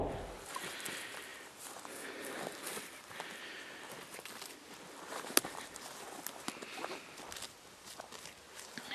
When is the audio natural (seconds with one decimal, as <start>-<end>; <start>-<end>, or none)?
0.0-8.9